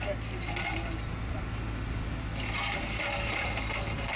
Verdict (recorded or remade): recorded